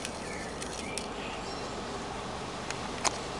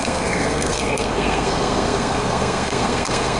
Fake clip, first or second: second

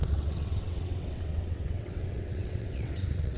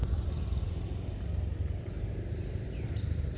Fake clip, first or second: first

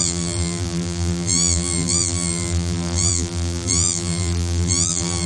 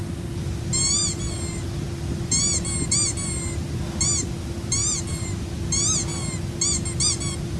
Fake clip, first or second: first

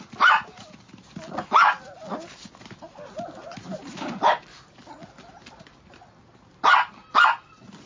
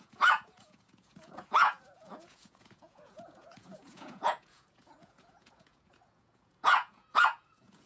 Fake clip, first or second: second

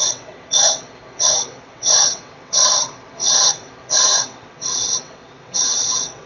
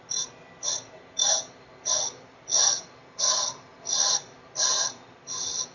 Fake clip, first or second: first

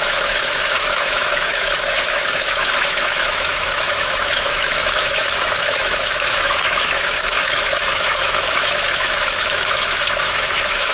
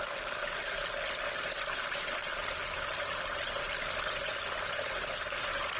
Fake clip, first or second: first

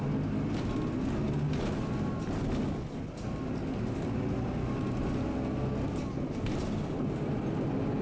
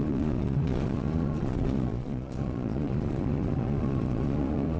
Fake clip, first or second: second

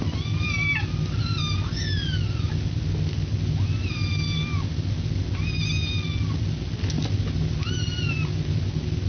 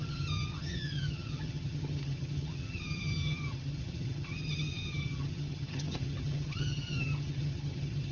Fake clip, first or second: second